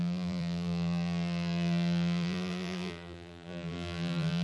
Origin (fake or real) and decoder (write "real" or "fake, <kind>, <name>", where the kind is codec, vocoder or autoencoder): fake, vocoder, BigVGAN v2